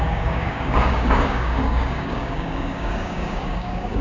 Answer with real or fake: fake